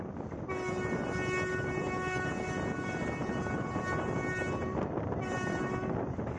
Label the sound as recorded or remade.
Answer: recorded